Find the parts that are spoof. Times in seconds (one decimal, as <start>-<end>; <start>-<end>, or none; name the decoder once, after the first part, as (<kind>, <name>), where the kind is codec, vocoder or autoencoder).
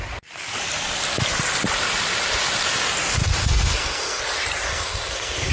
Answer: 3.4-4.2 (codec, SNAC); 4.7-5.5